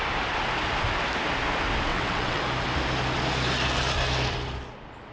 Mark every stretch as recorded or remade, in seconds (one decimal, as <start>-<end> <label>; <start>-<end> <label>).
0.0-1.9 recorded; 1.9-2.4 remade; 2.4-5.1 recorded

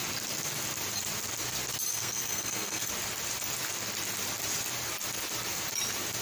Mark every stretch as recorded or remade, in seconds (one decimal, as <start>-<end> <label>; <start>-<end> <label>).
0.0-1.9 recorded; 1.9-2.9 remade; 2.9-6.2 recorded

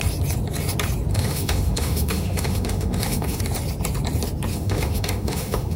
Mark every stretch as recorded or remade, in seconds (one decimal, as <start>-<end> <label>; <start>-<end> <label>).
0.0-1.1 recorded; 1.1-3.4 remade; 3.4-4.5 recorded; 4.5-5.8 remade

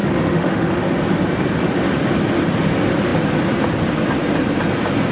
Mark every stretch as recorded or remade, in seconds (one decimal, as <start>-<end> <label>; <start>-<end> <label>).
0.0-0.8 remade; 0.8-5.1 recorded

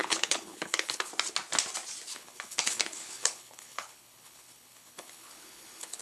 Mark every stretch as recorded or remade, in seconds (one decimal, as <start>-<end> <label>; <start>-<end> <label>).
0.0-1.1 remade; 1.1-2.1 recorded; 2.1-6.0 remade